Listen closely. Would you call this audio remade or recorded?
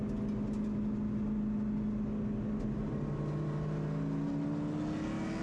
recorded